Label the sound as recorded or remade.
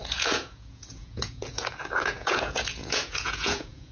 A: remade